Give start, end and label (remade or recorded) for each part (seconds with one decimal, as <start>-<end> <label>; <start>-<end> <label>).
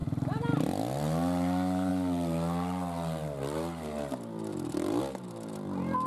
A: 0.0-6.1 recorded